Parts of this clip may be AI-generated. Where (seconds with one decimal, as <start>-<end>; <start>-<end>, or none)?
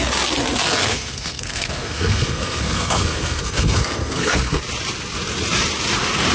0.8-4.6